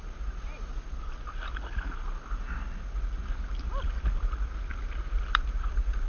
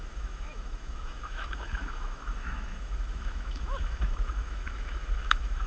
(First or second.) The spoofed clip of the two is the second